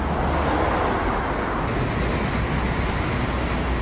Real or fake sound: real